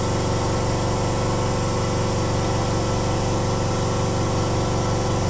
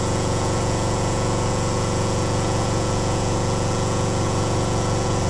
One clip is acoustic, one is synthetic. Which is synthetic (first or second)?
second